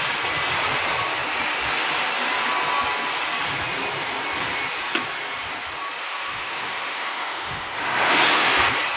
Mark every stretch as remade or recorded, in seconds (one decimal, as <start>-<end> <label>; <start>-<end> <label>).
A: 0.0-6.0 recorded; 6.0-8.5 remade; 8.5-9.0 recorded